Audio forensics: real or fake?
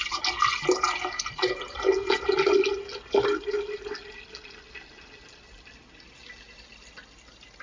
real